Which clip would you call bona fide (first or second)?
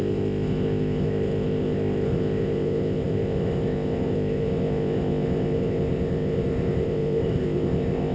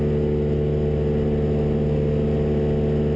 second